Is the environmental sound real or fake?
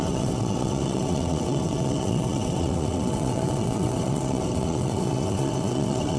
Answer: fake